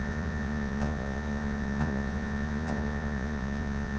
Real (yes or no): no